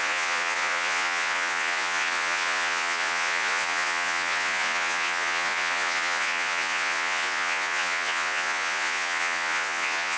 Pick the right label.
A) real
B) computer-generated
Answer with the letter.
B